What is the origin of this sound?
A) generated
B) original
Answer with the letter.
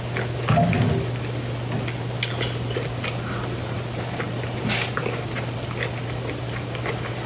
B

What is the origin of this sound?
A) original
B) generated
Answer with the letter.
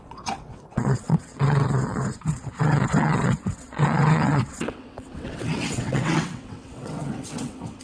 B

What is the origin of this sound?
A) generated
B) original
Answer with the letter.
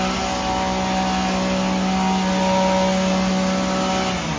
B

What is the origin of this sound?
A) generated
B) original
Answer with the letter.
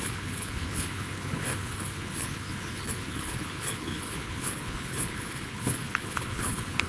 A